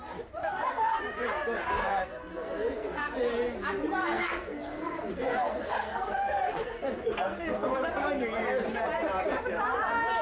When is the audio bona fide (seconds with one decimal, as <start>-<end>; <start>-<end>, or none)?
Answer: 0.0-0.4; 1.0-1.9; 3.2-4.0; 7.9-10.2